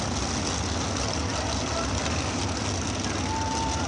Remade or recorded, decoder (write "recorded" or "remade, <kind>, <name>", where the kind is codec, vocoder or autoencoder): recorded